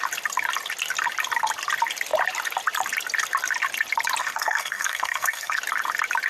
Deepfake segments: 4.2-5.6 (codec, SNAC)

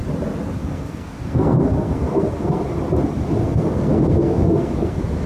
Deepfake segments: 0.6-2.6 (codec, SNAC); 3.4-5.3

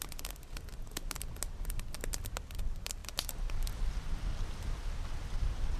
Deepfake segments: none

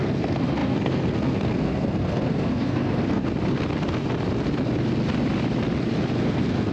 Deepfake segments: 0.0-3.2 (codec, SNAC); 6.2-6.7

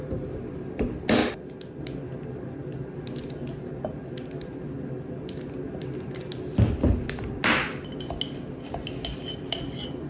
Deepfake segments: none

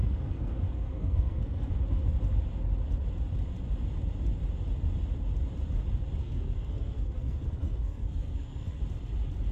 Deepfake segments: 0.0-1.7 (codec, SNAC); 6.2-8.8

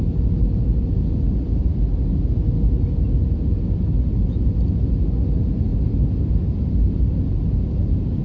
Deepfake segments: none